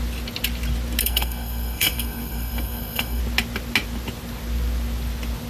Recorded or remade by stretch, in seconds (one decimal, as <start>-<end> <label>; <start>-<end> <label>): 0.0-1.0 recorded; 1.0-3.2 remade; 3.2-5.5 recorded